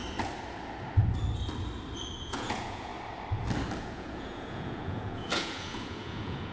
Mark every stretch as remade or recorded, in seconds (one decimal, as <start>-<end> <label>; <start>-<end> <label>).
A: 0.0-2.2 recorded; 2.2-2.9 remade; 2.9-3.8 recorded; 3.8-6.5 remade

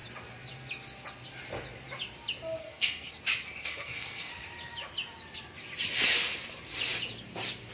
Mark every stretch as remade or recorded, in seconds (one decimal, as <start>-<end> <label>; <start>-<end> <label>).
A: 0.0-2.6 recorded; 2.6-3.2 remade; 3.2-3.6 recorded; 3.6-4.3 remade; 4.3-7.7 recorded

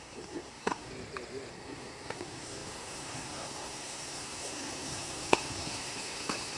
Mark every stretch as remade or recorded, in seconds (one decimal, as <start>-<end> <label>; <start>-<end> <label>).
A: 0.0-0.9 remade; 0.9-1.5 recorded; 1.5-6.6 remade

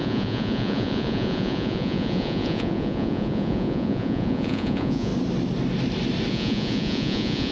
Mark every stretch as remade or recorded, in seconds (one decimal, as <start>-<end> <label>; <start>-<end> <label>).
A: 0.0-5.1 remade; 5.1-6.3 recorded; 6.3-7.5 remade

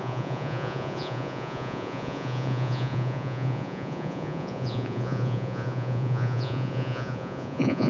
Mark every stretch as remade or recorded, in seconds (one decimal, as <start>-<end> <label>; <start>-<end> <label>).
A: 0.0-7.9 remade